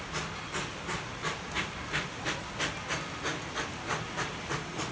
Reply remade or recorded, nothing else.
recorded